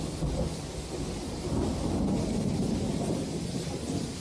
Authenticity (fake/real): real